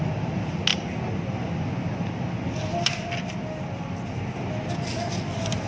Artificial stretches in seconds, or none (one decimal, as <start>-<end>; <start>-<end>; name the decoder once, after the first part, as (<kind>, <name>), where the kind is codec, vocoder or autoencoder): none